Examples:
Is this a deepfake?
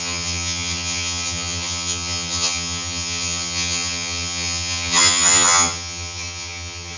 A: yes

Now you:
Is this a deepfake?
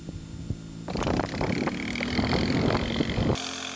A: no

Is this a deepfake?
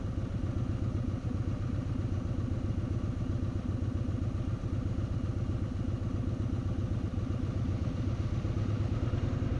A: no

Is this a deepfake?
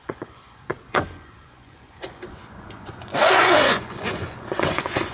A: yes